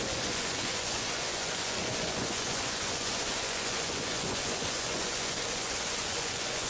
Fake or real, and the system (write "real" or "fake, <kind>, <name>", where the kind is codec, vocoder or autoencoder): fake, vocoder, Vocos